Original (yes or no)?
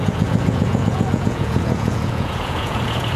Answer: no